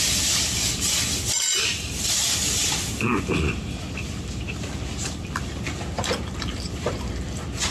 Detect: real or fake fake